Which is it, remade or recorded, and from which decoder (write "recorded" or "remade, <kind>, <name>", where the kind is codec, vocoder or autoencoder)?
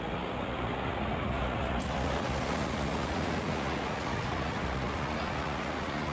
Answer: remade, vocoder, Vocos